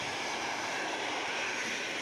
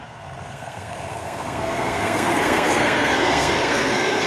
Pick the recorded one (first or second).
first